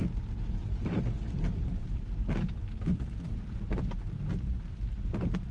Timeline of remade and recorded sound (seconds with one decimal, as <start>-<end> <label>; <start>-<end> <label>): 0.0-0.6 recorded; 0.6-3.9 remade; 3.9-4.5 recorded; 4.5-5.1 remade; 5.1-5.5 recorded